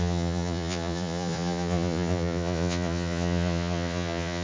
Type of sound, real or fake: fake